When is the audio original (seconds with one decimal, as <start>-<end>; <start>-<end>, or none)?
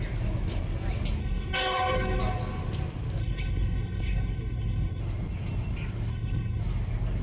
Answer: 0.0-1.2; 2.2-3.2; 5.0-6.1; 6.6-7.2